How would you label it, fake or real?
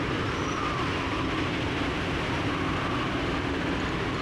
real